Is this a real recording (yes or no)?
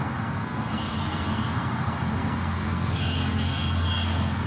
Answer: no